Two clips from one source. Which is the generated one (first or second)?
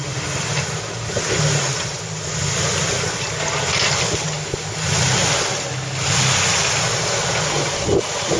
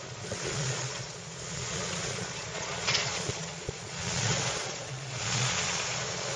second